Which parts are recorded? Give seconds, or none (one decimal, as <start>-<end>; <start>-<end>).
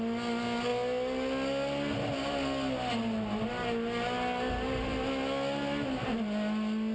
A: 0.0-6.9